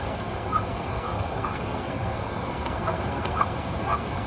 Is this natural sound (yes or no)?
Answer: no